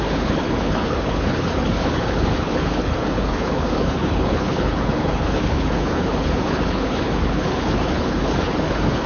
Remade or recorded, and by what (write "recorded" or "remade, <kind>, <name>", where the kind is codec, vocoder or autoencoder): remade, codec, HILCodec